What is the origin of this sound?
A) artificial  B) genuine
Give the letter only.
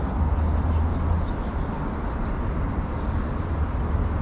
B